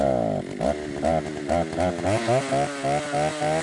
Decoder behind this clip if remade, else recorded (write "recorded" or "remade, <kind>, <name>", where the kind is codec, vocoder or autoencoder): recorded